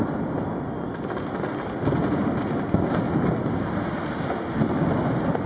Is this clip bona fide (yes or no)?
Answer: yes